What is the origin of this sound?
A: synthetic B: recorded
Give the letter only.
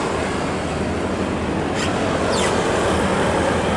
B